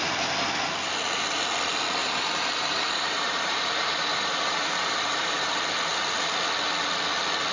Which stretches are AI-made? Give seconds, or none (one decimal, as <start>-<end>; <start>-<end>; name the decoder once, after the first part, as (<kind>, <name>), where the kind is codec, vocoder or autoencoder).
2.0-5.5 (vocoder, BigVGAN v2)